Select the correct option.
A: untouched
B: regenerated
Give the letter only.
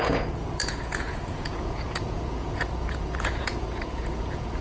B